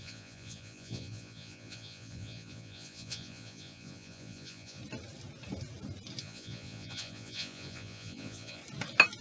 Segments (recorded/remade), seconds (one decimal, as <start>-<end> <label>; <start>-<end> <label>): 0.0-4.8 remade; 4.8-6.2 recorded; 6.2-8.6 remade; 8.6-9.2 recorded